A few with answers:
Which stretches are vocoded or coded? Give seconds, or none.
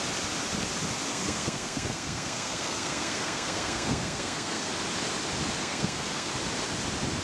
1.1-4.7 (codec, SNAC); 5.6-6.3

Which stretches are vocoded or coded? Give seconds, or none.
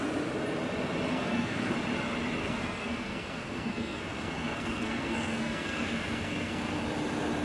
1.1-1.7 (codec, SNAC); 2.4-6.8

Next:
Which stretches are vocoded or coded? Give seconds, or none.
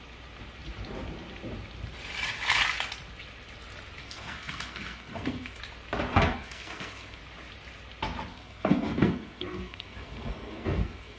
4.0-5.6 (codec, SNAC); 6.1-7.2; 8.3-11.2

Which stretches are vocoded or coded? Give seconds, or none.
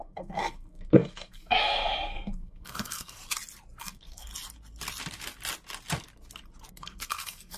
0.0-3.2 (codec, SNAC); 3.8-4.3; 6.7-7.6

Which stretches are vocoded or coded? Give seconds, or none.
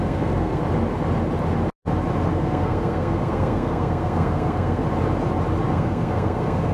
0.0-0.6 (codec, SNAC); 2.3-4.8; 5.6-6.7